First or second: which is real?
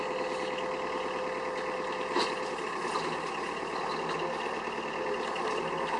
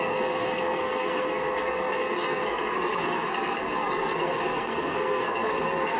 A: first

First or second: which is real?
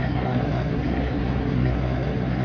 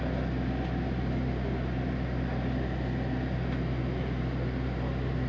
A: second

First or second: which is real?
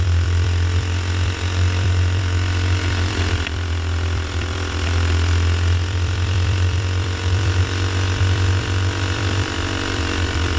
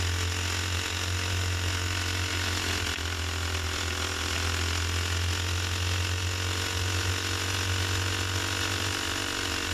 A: second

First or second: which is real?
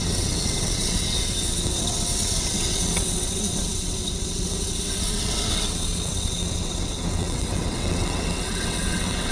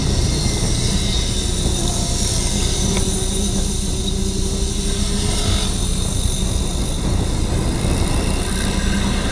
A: second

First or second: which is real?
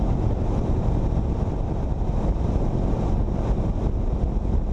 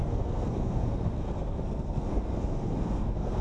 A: first